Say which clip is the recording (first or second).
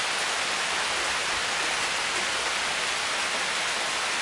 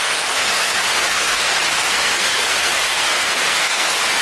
first